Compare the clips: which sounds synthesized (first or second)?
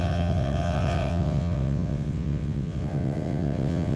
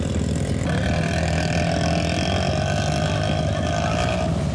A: first